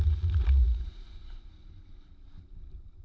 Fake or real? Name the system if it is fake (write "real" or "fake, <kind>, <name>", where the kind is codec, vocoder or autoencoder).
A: fake, vocoder, BigVGAN v2